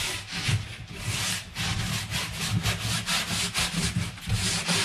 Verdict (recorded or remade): recorded